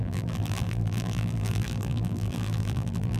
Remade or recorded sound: remade